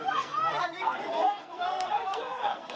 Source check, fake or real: fake